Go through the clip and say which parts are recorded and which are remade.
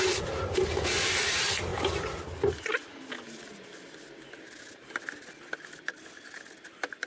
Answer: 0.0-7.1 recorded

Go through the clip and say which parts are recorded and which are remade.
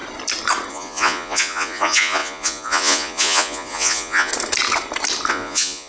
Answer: 0.0-0.7 recorded; 0.7-4.3 remade; 4.3-5.3 recorded; 5.3-5.9 remade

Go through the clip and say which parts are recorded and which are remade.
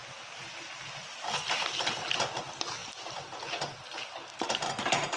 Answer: 0.0-5.2 recorded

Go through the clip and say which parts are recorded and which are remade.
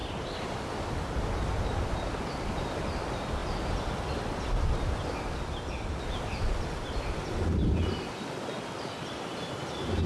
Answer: 0.0-3.4 remade; 3.4-8.6 recorded; 8.6-9.3 remade; 9.3-10.1 recorded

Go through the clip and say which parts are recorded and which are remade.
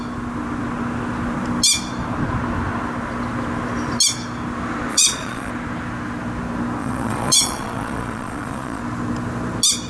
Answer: 0.0-4.9 recorded; 4.9-5.5 remade; 5.5-6.8 recorded; 6.8-8.8 remade; 8.8-9.9 recorded